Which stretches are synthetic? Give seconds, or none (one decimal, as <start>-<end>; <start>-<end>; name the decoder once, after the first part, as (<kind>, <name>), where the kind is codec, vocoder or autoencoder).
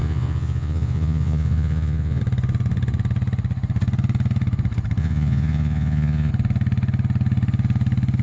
0.0-2.2 (vocoder, Vocos); 5.0-6.3